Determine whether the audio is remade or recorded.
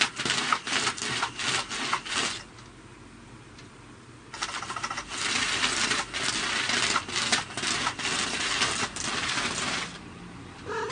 recorded